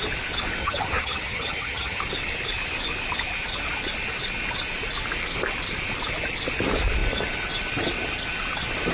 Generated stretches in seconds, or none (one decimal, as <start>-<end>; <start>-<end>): 0.6-2.0